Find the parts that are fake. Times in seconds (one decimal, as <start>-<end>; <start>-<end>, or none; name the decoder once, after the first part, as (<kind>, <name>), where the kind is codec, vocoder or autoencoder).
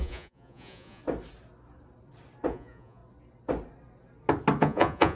0.0-1.0 (vocoder, Vocos); 2.5-3.0; 4.6-5.1